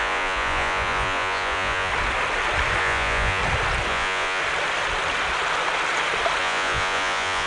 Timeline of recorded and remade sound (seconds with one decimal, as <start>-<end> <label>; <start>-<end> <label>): 0.0-1.9 remade; 1.9-2.8 recorded; 2.8-3.4 remade; 3.4-3.9 recorded; 3.9-4.4 remade; 4.4-6.4 recorded; 6.4-7.5 remade